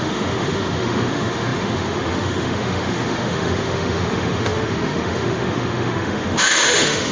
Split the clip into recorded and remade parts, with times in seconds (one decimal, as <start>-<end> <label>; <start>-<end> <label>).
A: 0.0-7.1 remade